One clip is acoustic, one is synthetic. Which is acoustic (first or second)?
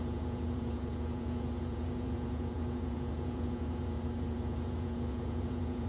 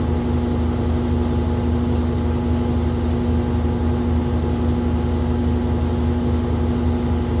second